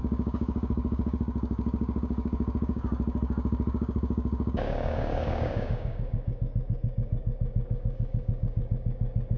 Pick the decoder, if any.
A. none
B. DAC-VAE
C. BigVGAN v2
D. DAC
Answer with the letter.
D